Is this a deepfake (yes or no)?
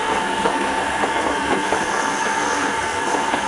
yes